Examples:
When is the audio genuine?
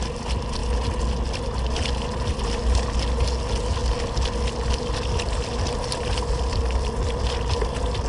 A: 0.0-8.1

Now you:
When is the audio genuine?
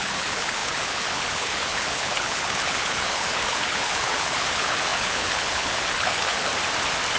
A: 6.5-7.2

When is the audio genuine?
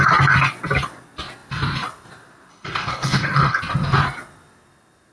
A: 0.0-2.5; 3.6-5.1